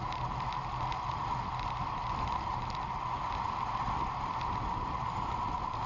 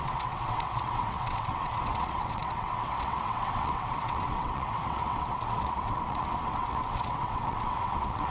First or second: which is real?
first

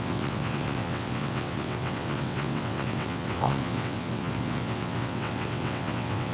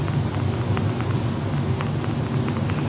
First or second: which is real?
second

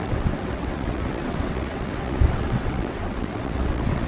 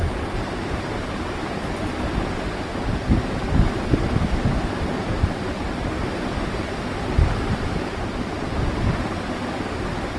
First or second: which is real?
second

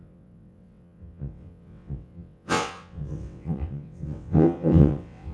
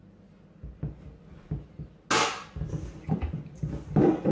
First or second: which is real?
second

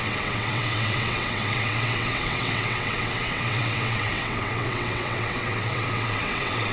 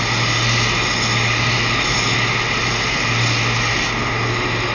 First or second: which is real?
second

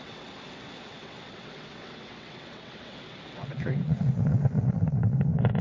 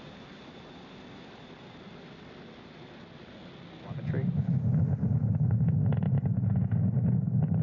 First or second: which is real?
second